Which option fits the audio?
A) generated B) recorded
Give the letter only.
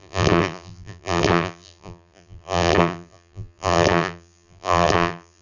A